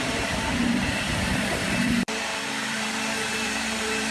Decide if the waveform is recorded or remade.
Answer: remade